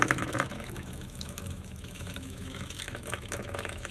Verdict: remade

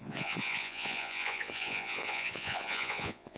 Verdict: remade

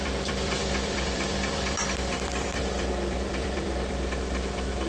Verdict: remade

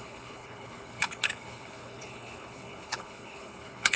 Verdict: remade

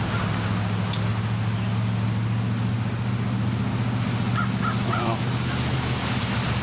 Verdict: recorded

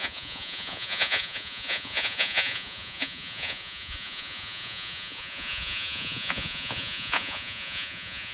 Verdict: remade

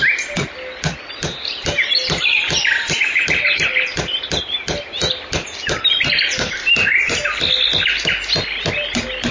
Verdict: recorded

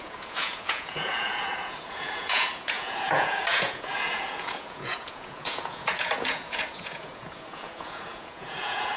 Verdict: remade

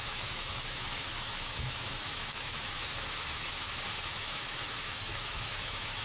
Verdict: remade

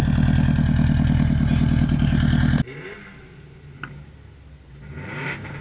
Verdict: recorded